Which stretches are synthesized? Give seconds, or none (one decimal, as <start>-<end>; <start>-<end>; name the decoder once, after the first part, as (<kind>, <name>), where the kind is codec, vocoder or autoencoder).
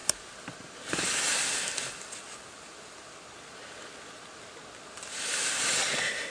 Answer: none